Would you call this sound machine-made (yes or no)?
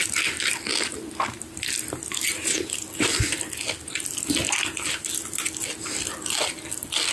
no